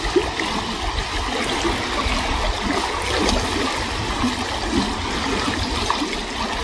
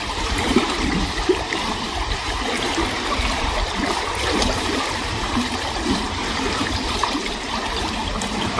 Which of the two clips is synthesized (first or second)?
second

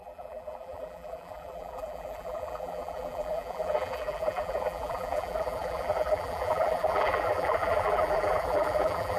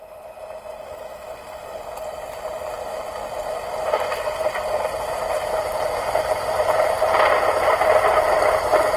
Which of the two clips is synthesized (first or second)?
first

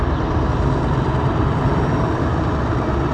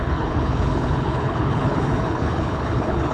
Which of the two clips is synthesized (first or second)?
second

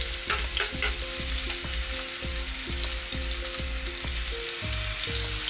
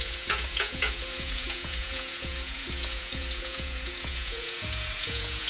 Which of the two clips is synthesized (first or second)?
second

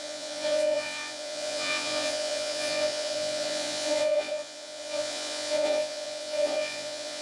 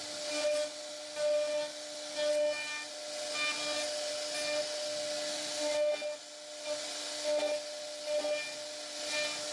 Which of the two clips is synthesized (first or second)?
first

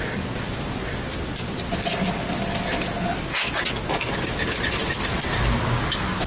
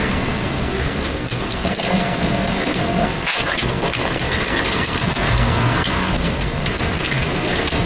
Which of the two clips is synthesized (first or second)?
second